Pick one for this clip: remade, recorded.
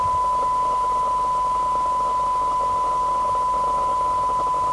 recorded